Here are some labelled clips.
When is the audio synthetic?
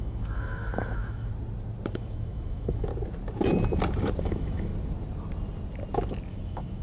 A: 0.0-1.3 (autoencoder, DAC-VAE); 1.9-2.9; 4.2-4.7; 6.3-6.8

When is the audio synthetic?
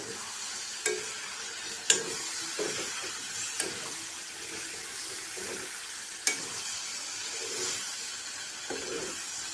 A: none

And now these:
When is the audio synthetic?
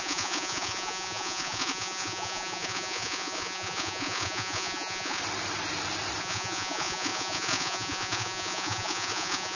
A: 0.0-5.2 (vocoder, Vocos); 6.2-9.6